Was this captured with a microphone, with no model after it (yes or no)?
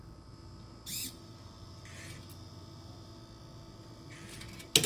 yes